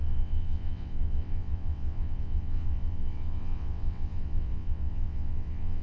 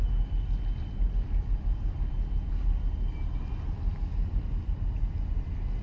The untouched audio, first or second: second